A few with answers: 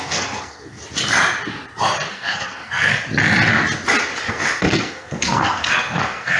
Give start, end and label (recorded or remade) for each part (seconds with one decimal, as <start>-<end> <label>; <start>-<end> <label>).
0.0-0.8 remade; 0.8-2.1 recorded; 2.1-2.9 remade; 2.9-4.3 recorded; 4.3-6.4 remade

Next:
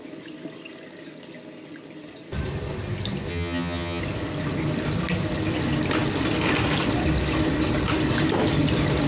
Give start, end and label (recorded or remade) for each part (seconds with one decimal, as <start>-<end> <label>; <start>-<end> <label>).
0.0-3.3 recorded; 3.3-4.0 remade; 4.0-9.1 recorded

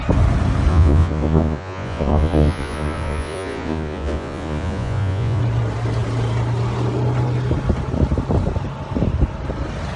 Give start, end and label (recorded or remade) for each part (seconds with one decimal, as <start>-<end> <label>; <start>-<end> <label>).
0.0-0.7 recorded; 0.7-5.4 remade; 5.4-10.0 recorded